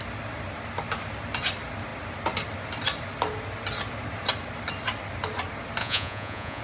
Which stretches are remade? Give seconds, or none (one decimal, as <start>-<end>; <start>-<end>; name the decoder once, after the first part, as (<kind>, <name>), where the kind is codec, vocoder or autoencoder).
5.8-6.6 (vocoder, Vocos)